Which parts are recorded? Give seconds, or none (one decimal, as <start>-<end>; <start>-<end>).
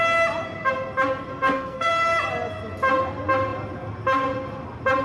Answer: 0.0-1.3; 1.9-5.0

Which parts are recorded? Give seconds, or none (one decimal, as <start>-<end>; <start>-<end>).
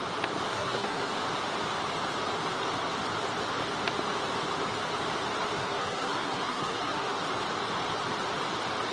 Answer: 0.0-0.5; 1.1-5.6; 7.2-8.9